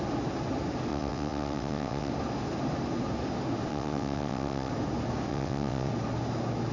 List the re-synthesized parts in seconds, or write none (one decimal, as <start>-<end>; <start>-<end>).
0.9-2.1; 3.7-4.7; 5.3-5.9

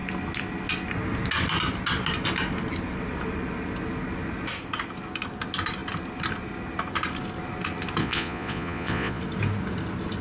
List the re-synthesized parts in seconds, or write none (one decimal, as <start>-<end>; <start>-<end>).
8.0-9.2